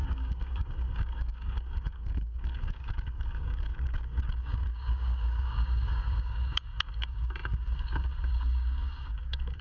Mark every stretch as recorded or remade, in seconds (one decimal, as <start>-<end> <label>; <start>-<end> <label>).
0.0-9.6 remade